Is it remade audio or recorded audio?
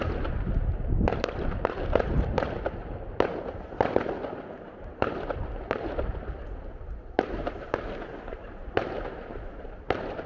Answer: remade